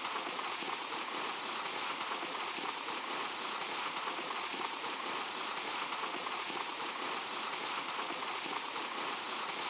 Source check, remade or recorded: remade